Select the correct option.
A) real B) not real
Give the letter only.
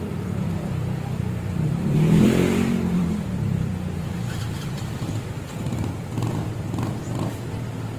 B